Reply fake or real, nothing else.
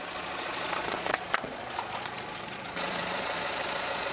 fake